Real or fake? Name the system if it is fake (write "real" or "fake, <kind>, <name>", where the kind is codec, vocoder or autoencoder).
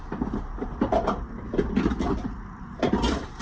real